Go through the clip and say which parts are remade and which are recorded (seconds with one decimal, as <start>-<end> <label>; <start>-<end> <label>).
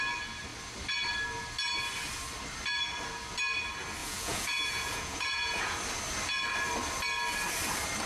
0.0-4.0 recorded; 4.0-5.8 remade; 5.8-8.1 recorded